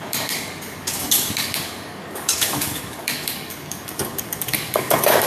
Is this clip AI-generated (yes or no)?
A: yes